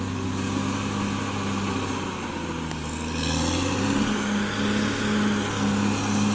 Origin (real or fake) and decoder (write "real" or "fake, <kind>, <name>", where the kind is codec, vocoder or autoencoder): real